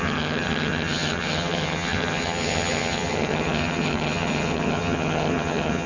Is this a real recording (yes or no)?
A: no